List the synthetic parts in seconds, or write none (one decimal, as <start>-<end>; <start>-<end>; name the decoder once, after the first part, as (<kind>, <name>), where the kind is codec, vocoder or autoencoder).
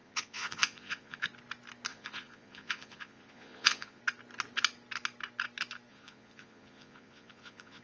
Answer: 0.0-1.2 (vocoder, Vocos); 1.9-4.0; 5.9-7.8